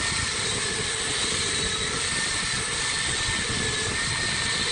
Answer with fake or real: real